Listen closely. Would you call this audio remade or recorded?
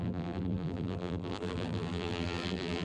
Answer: remade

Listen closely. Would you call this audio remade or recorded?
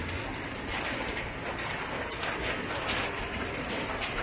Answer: recorded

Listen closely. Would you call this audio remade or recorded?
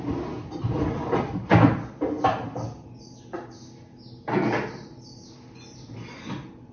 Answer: recorded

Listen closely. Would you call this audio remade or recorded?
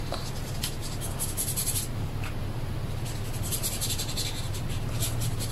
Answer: recorded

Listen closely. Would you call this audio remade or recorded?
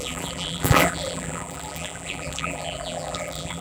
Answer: remade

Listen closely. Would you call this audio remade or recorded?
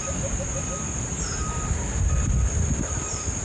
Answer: recorded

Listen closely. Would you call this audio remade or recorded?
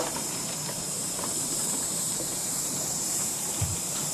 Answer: remade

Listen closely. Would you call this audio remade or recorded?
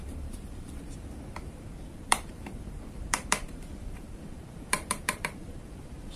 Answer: remade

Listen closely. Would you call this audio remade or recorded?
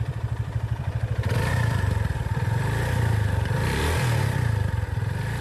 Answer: remade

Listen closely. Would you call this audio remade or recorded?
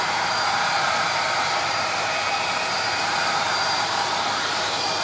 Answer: remade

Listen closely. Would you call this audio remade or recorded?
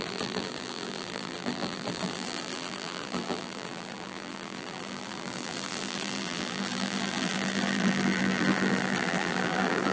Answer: remade